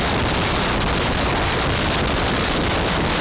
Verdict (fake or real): real